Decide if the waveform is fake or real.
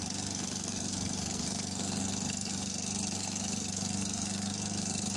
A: fake